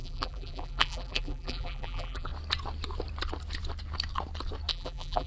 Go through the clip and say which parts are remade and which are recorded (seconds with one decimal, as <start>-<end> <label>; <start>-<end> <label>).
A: 0.0-2.3 remade; 2.3-4.7 recorded; 4.7-5.3 remade

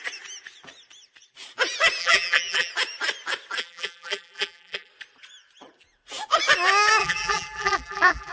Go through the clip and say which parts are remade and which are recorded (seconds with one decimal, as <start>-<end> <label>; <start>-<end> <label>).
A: 0.0-2.0 recorded; 2.0-2.7 remade; 2.7-3.6 recorded; 3.6-4.9 remade; 4.9-7.0 recorded; 7.0-8.3 remade

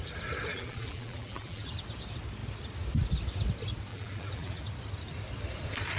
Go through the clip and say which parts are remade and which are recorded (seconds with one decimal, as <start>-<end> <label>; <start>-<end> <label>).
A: 0.0-0.5 recorded; 0.5-1.7 remade; 1.7-3.9 recorded; 3.9-4.6 remade; 4.6-6.0 recorded